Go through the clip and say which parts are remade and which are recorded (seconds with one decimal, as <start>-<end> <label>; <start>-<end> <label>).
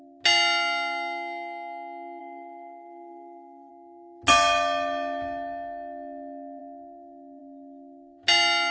0.0-2.2 recorded; 2.2-3.7 remade; 3.7-8.7 recorded